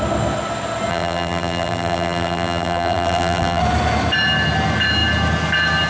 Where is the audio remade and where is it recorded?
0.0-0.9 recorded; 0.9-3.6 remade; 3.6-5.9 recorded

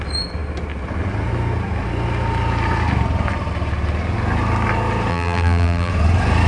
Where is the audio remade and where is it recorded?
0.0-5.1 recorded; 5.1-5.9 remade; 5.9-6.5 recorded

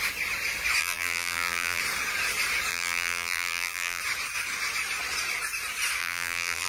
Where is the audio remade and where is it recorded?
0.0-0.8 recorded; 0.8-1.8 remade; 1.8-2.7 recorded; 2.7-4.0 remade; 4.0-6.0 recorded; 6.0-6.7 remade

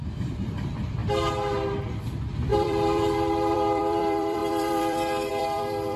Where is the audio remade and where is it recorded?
0.0-1.0 remade; 1.0-1.8 recorded; 1.8-6.0 remade

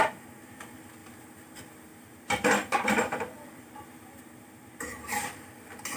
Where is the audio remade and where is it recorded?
0.0-6.0 recorded

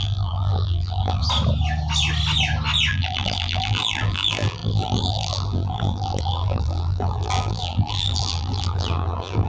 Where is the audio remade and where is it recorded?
0.0-1.2 remade; 1.2-2.9 recorded; 2.9-9.5 remade